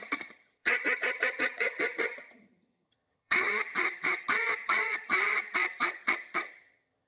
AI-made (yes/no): yes